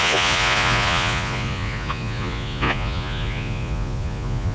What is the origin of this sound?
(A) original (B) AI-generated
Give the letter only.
B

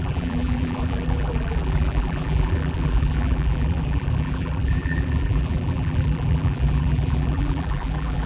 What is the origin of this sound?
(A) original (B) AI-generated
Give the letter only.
B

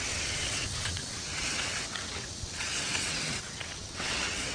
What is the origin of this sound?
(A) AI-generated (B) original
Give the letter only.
A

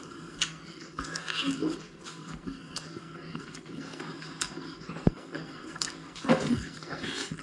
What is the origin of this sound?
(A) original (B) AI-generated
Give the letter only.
B